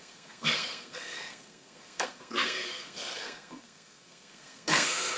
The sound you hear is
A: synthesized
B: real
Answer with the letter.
A